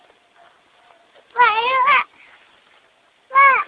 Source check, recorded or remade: recorded